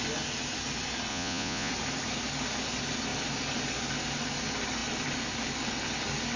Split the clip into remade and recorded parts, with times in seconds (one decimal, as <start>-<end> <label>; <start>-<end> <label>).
0.0-1.1 recorded; 1.1-1.7 remade; 1.7-6.4 recorded